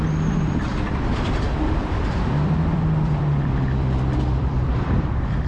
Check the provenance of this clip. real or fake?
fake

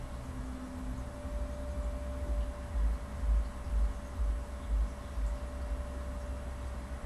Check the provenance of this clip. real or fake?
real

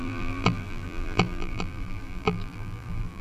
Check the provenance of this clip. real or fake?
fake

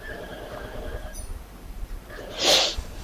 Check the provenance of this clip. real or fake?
fake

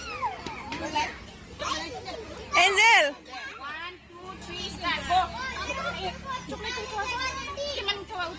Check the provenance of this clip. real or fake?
real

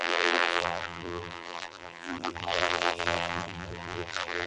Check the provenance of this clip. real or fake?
fake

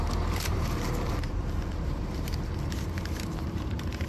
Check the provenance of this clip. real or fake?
fake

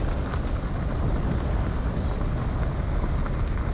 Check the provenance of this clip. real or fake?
real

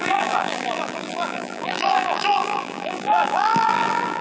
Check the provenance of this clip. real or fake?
fake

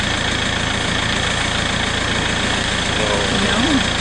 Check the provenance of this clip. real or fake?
real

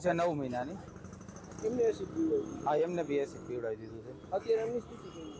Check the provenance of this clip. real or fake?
real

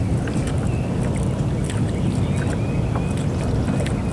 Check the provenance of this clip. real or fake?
real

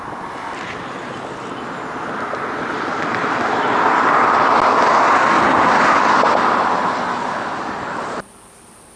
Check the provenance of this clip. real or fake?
real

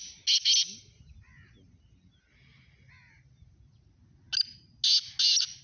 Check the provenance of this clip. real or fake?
real